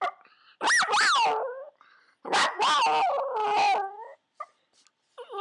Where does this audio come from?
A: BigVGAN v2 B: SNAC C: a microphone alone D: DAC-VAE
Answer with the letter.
C